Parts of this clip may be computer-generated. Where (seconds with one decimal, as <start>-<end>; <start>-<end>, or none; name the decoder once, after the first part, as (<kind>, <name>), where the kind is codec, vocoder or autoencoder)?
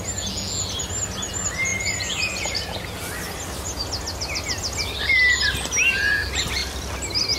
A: none